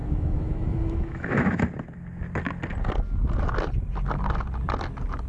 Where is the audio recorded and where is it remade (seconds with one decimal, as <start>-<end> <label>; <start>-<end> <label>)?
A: 0.0-1.6 remade; 1.6-5.3 recorded